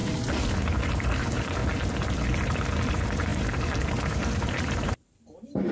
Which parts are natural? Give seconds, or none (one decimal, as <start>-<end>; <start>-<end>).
0.0-0.5; 1.6-2.9